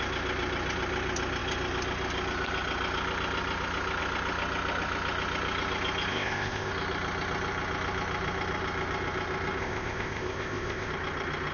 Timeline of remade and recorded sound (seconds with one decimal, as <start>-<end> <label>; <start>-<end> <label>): 0.0-6.1 recorded; 6.1-6.7 remade; 6.7-9.6 recorded; 9.6-10.9 remade; 10.9-11.5 recorded